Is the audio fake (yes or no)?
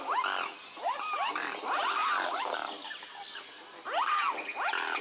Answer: no